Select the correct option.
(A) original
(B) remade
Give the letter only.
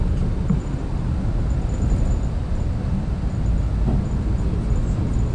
A